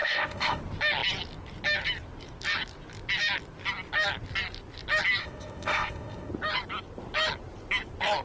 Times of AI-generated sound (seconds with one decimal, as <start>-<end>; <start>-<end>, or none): 0.0-0.6; 5.2-6.3